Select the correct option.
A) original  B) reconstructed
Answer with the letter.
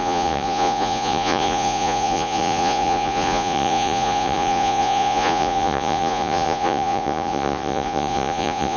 B